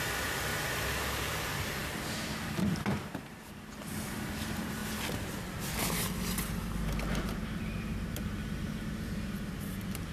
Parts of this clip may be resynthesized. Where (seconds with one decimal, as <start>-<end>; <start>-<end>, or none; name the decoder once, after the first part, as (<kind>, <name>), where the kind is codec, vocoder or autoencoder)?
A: 0.0-4.8 (vocoder, BigVGAN v2); 7.2-10.1